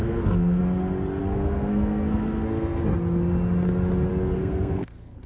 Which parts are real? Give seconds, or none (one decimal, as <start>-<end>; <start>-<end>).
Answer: 0.6-1.2; 2.8-4.1